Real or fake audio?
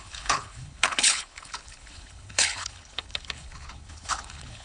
fake